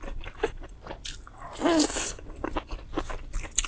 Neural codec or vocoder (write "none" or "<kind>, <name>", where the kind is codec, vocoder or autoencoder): none